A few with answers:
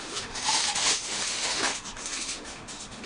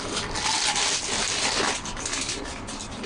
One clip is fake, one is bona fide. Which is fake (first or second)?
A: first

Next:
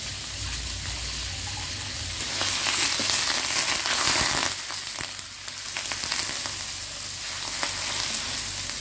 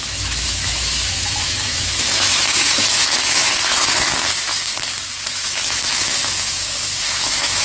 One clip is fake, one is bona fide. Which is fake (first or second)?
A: second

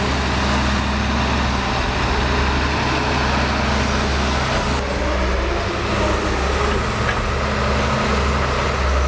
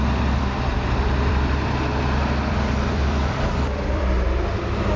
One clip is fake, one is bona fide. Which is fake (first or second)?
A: second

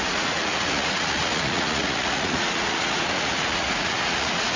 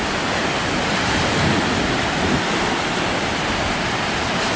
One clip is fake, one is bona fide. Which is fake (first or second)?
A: first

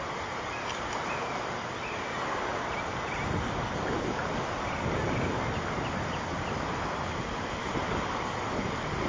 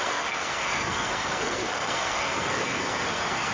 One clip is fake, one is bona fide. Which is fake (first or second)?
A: second